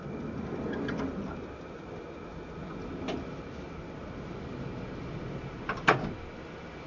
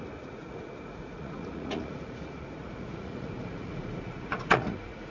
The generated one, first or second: second